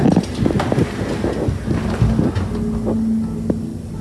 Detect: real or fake real